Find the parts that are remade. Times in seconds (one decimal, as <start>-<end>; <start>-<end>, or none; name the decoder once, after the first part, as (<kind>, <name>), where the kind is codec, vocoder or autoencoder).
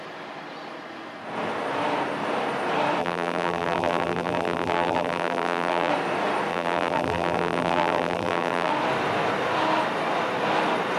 3.0-5.9 (vocoder, BigVGAN v2); 6.5-8.7